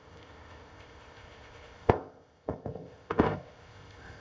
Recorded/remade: remade